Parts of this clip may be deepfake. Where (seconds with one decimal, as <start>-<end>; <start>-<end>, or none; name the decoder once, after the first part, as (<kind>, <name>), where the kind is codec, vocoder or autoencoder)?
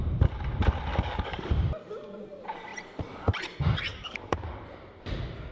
0.9-1.5 (codec, DAC); 3.9-4.6